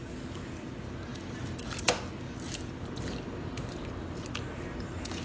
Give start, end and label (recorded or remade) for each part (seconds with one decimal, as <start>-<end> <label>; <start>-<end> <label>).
0.0-5.2 recorded